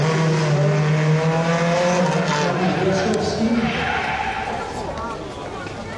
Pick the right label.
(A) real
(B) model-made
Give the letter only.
A